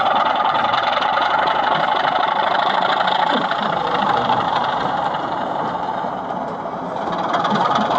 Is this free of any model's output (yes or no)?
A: no